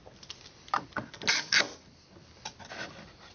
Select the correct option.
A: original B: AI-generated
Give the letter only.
A